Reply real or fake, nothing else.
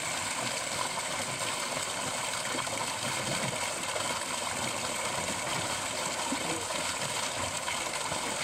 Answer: real